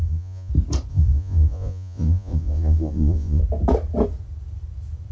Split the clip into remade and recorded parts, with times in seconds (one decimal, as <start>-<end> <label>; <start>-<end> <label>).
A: 0.0-0.5 remade; 0.5-0.9 recorded; 0.9-3.4 remade; 3.4-5.1 recorded